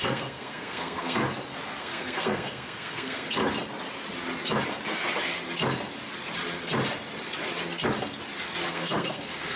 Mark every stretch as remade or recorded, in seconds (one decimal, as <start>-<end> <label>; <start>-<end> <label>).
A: 0.0-1.2 remade; 1.2-1.8 recorded; 1.8-3.4 remade; 3.4-8.7 recorded; 8.7-9.6 remade